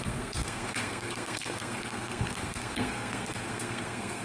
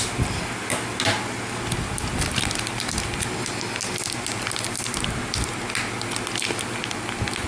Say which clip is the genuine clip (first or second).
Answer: second